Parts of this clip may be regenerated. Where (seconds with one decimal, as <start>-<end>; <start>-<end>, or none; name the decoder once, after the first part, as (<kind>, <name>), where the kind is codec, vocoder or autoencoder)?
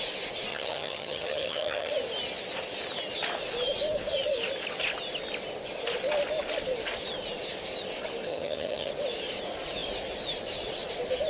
0.5-1.9 (vocoder, HiFi-GAN); 8.3-8.9